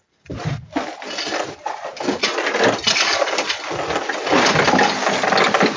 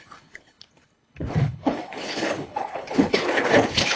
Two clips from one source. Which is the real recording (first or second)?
first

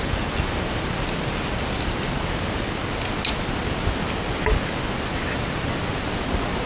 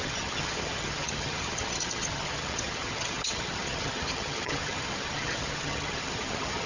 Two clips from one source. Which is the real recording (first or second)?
first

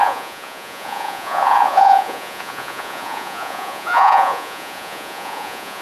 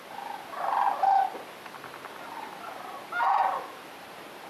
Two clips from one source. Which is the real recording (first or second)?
second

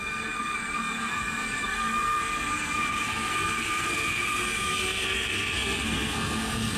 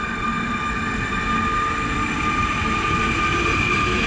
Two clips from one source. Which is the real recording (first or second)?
second